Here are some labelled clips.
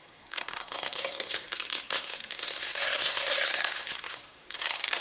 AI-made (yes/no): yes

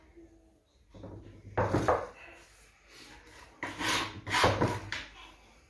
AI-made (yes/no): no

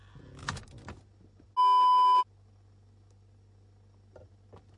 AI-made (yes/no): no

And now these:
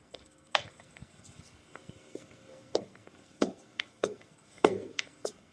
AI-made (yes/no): yes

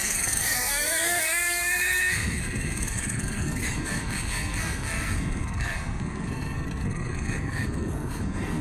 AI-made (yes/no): yes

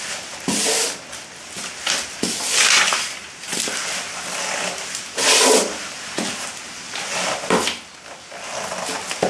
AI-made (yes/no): no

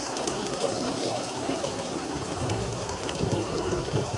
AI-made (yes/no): yes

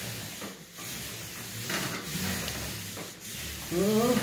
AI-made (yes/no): no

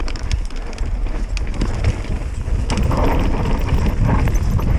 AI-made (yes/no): no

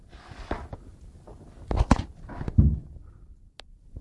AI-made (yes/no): no